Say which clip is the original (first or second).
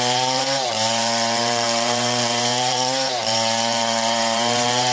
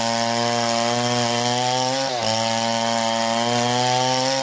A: second